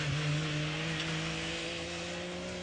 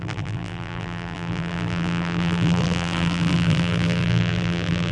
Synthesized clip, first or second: second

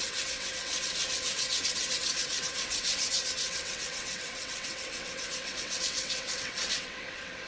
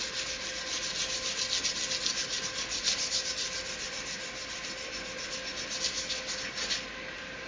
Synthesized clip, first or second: first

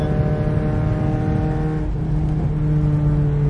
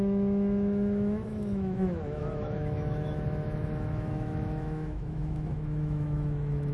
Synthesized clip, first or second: second